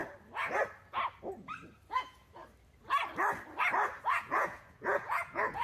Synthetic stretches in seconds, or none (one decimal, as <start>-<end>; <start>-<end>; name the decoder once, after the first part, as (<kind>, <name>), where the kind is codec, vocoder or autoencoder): 1.9-2.4 (vocoder, Vocos); 4.1-5.6